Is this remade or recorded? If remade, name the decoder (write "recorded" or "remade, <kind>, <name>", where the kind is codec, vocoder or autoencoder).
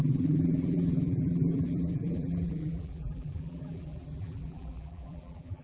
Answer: remade, vocoder, BigVGAN v2